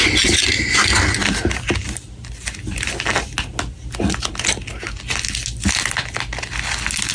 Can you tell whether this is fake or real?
real